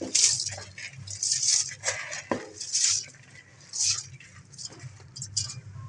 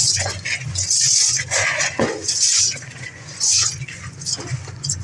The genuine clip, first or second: first